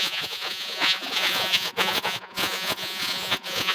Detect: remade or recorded remade